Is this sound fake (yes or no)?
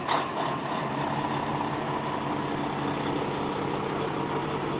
no